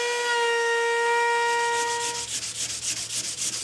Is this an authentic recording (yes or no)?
yes